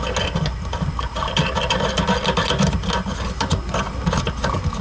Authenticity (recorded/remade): recorded